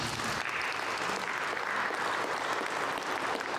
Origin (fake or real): real